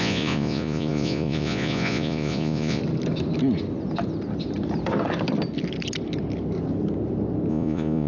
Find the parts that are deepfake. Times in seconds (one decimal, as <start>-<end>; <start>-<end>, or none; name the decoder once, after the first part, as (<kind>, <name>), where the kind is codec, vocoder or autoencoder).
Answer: 0.0-2.8 (vocoder, Vocos); 7.5-8.1